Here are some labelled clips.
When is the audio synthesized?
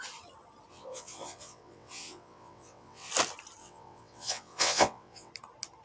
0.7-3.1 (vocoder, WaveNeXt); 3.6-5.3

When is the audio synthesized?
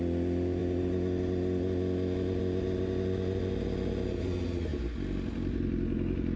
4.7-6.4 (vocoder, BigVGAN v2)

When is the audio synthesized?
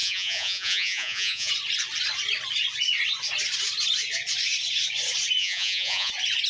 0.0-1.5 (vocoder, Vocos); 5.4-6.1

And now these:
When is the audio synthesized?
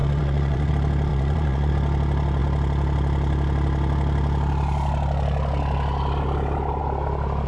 0.0-0.7 (vocoder, Vocos); 1.1-1.7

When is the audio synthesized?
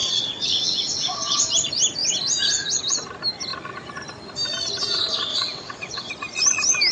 0.0-1.5 (vocoder, WaveNeXt); 5.3-6.1